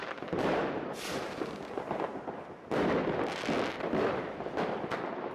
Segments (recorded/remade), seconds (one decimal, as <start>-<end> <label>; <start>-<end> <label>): 0.0-2.4 remade; 2.4-5.3 recorded